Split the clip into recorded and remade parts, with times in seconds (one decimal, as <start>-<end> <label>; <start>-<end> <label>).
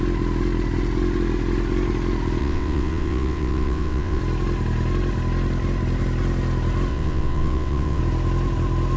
0.0-2.4 recorded; 2.4-4.2 remade; 4.2-6.9 recorded; 6.9-8.0 remade; 8.0-9.0 recorded